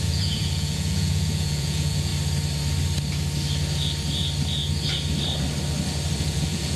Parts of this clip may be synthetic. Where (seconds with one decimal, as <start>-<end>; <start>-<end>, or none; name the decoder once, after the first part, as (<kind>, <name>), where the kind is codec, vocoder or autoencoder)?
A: 0.0-2.1 (vocoder, Vocos); 6.2-6.8

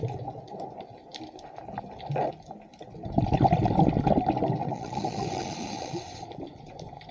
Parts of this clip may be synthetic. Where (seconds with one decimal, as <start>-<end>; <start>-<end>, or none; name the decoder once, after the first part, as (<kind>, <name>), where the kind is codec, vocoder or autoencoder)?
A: 4.6-6.0 (vocoder, Vocos)